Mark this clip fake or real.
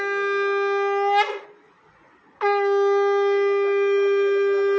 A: real